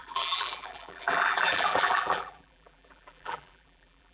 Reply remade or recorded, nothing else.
remade